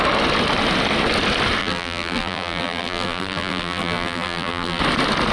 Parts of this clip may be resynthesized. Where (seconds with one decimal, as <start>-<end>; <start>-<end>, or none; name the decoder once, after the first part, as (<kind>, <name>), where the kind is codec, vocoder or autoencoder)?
1.6-4.8 (vocoder, BigVGAN v2)

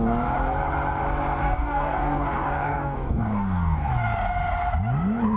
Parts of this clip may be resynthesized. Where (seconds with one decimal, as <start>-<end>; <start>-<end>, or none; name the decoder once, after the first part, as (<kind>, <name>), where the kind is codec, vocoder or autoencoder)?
1.4-3.9 (codec, DAC)